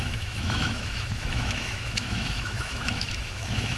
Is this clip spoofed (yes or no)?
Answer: yes